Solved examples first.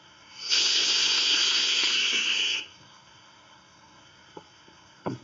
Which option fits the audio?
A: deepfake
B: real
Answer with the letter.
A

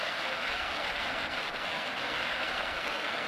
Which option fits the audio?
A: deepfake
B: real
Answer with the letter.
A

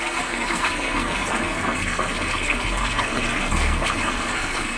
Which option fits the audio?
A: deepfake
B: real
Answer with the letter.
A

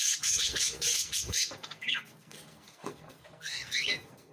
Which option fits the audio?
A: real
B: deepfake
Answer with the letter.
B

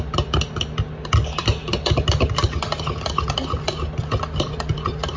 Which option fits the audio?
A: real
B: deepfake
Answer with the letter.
A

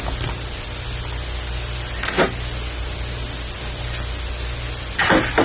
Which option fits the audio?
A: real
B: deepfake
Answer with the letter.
A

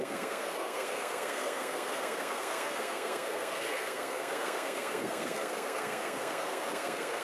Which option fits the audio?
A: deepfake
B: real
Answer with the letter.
A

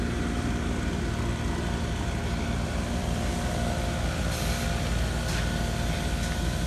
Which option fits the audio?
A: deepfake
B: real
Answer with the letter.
B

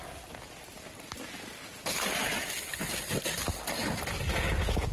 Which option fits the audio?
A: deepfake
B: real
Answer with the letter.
B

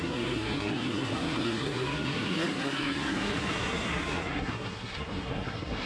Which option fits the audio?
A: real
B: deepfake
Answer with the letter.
B